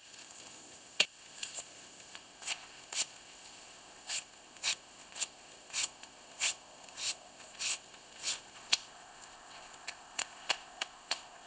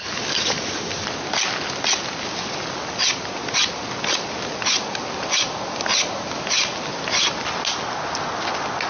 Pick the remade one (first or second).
first